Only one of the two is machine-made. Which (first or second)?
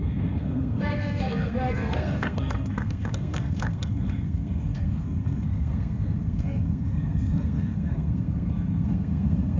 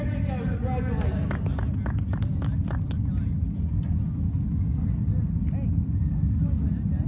first